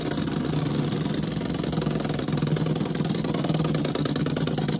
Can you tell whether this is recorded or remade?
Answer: recorded